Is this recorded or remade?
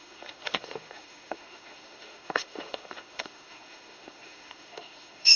remade